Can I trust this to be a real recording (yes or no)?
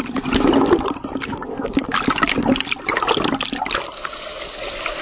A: yes